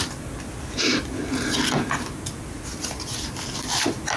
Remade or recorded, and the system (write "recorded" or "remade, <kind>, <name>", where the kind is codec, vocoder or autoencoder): recorded